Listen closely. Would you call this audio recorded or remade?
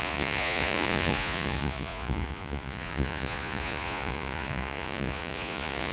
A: remade